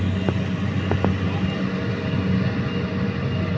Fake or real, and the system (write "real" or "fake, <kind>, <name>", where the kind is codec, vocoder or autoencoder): real